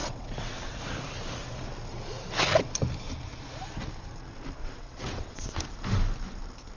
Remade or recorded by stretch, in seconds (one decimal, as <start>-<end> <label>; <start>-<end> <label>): 0.0-0.8 remade; 0.8-4.6 recorded; 4.6-5.6 remade; 5.6-6.8 recorded